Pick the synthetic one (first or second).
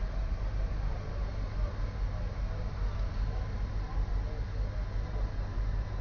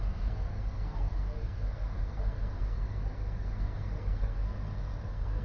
second